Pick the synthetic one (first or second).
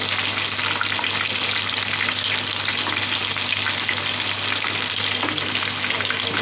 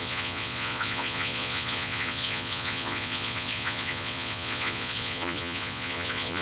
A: second